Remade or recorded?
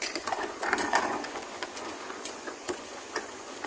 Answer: remade